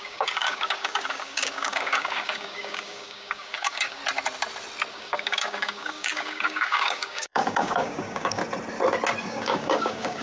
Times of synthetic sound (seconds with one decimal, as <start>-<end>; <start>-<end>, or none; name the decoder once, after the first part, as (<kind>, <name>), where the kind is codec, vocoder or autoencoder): 0.0-4.0 (codec, DAC); 4.9-8.4; 9.2-10.2